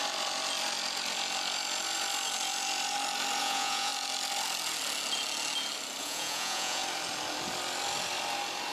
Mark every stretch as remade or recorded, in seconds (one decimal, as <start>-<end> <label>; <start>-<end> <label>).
0.0-3.4 recorded; 3.4-3.9 remade; 3.9-6.0 recorded; 6.0-6.8 remade; 6.8-8.7 recorded